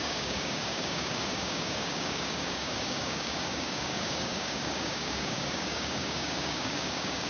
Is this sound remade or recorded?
remade